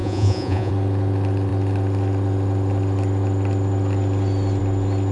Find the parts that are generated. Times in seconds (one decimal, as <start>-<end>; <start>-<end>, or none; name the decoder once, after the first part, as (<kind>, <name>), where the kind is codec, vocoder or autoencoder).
0.0-0.7 (vocoder, Vocos)